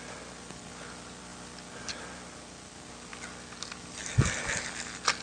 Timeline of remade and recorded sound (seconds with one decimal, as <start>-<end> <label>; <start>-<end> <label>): 0.0-5.2 recorded